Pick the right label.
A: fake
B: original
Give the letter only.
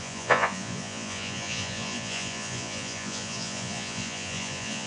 A